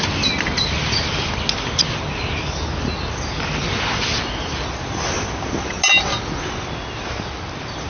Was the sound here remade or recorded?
recorded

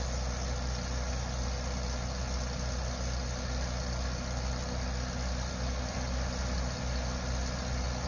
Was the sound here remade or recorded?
recorded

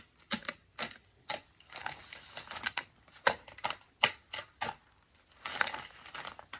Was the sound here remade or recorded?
recorded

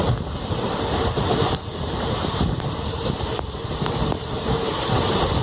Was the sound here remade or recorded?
remade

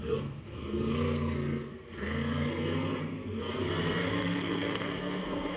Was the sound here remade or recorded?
remade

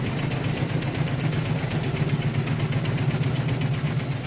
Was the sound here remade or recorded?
recorded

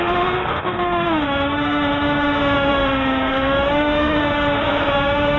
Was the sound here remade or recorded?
remade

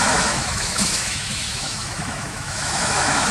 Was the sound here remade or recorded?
remade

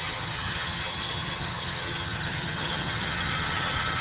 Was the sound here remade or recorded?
remade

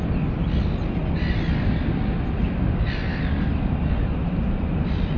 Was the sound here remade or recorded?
recorded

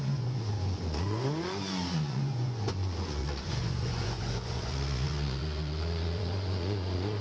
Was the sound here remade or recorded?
remade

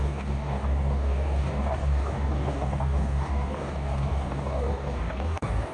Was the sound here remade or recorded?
remade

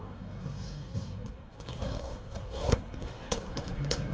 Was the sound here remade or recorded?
remade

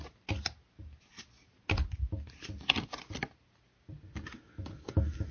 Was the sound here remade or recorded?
recorded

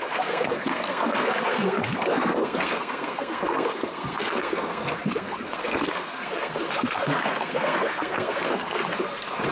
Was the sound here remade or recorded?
remade